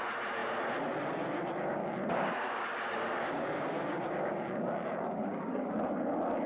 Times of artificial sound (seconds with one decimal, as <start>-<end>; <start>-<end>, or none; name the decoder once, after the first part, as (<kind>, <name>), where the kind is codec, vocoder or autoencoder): 1.8-5.7 (codec, DAC)